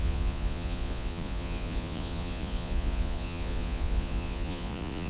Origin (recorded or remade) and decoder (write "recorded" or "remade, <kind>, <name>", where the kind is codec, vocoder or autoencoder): remade, vocoder, Vocos